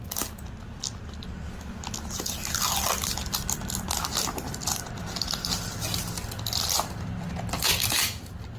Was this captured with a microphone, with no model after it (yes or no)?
yes